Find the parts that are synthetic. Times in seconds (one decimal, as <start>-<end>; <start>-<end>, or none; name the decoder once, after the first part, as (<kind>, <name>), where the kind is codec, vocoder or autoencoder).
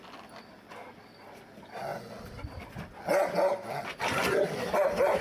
none